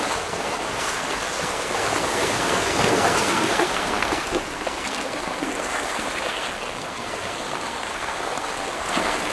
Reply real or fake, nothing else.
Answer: fake